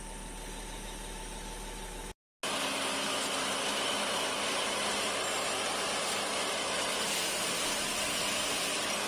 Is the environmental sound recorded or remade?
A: recorded